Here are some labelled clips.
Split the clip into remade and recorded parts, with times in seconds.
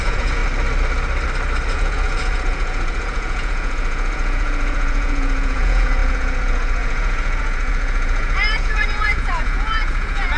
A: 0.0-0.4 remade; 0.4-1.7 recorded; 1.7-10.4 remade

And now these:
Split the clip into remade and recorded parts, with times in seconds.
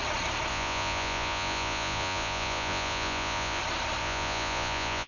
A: 0.0-0.5 recorded; 0.5-3.6 remade; 3.6-4.0 recorded; 4.0-5.1 remade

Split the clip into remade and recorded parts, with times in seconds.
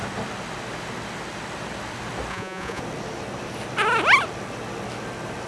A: 0.0-2.3 recorded; 2.3-2.8 remade; 2.8-5.5 recorded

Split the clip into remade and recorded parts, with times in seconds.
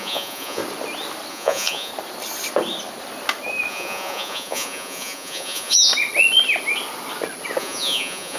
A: 0.0-0.6 remade; 0.6-1.3 recorded; 1.3-1.9 remade; 1.9-3.7 recorded; 3.7-5.9 remade; 5.9-7.6 recorded; 7.6-8.4 remade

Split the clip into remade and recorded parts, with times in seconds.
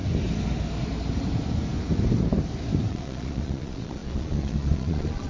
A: 0.0-2.9 recorded; 2.9-5.3 remade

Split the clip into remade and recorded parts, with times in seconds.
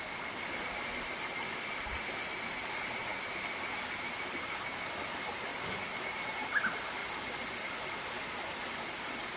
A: 0.0-9.4 recorded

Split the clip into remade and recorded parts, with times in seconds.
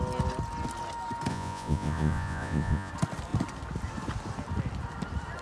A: 0.0-1.3 recorded; 1.3-2.9 remade; 2.9-5.4 recorded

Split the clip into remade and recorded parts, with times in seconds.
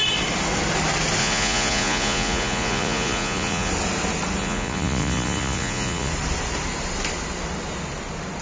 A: 0.0-1.2 recorded; 1.2-3.7 remade; 3.7-4.4 recorded; 4.4-6.1 remade; 6.1-8.4 recorded